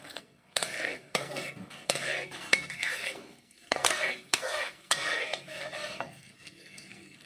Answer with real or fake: fake